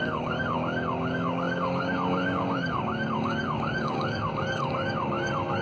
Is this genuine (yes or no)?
no